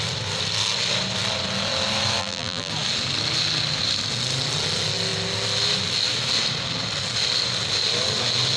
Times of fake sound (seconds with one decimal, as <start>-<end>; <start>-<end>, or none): 2.2-2.7